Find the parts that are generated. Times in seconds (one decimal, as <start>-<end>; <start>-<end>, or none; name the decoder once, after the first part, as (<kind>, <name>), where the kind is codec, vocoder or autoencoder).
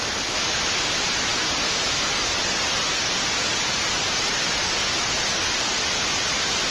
none